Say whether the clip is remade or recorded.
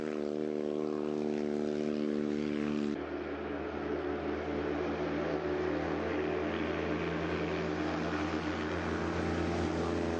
recorded